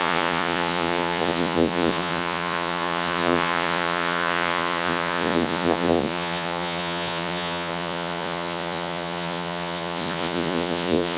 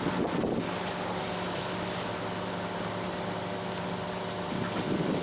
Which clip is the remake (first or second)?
first